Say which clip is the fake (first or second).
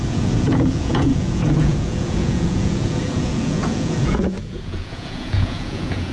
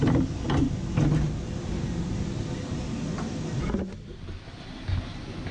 first